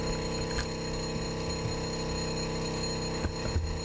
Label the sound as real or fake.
real